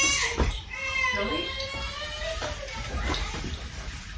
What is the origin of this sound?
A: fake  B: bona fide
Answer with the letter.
A